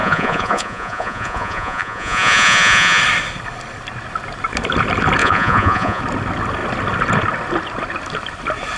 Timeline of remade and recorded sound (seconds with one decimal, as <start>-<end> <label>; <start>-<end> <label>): 0.0-3.0 remade; 3.0-5.2 recorded; 5.2-6.0 remade; 6.0-8.8 recorded